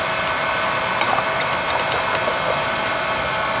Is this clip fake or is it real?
real